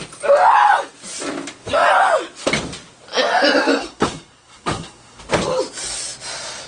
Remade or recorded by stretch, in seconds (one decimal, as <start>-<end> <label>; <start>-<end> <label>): 0.0-3.9 recorded; 3.9-5.2 remade; 5.2-6.7 recorded